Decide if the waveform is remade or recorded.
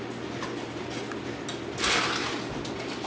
recorded